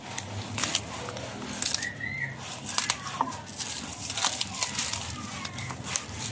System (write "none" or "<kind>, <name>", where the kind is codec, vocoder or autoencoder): none